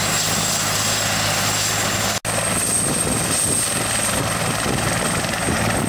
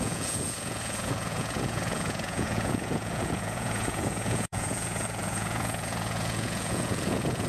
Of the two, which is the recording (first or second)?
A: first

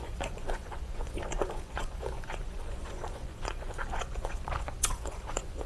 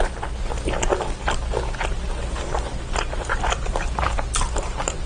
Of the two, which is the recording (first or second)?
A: second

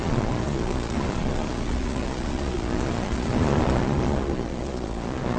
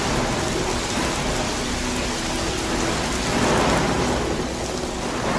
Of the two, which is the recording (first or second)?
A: second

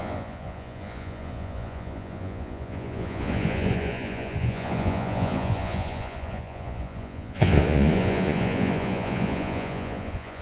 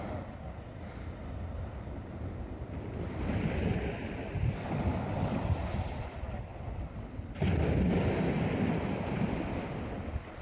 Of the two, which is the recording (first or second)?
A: second